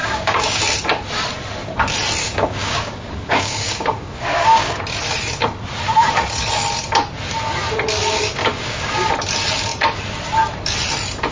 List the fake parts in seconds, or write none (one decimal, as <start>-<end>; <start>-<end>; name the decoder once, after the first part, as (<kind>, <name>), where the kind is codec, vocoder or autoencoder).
0.0-0.6 (codec, DAC); 2.2-4.8; 8.4-9.1